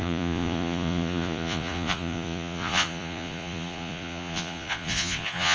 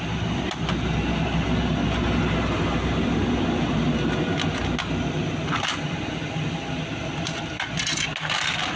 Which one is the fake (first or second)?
first